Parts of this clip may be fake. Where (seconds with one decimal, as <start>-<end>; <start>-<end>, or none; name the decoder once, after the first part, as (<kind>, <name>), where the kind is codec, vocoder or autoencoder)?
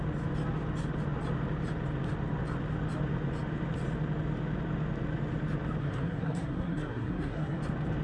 5.8-7.6 (codec, SNAC)